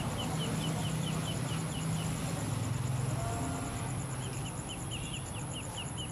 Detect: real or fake real